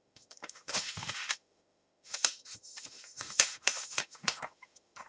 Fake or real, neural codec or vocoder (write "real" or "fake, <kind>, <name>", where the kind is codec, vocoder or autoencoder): fake, autoencoder, DAC-VAE